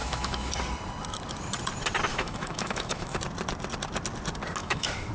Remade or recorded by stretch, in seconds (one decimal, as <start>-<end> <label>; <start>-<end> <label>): 0.0-0.5 remade; 0.5-2.1 recorded; 2.1-3.2 remade; 3.2-4.6 recorded; 4.6-5.1 remade